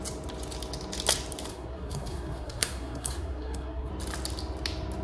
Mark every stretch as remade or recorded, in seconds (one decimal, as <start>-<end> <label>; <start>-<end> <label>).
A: 0.0-1.5 recorded; 1.5-3.9 remade; 3.9-5.0 recorded